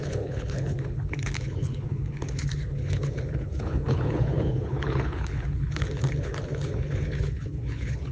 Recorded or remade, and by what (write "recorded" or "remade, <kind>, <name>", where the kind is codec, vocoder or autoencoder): remade, codec, HILCodec